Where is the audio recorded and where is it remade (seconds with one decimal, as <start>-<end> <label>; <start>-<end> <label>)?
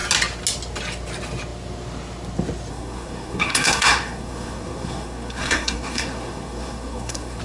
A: 0.0-2.7 recorded; 2.7-7.4 remade